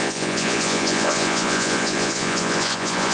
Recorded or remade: remade